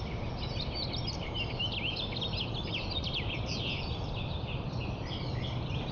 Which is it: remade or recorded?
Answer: remade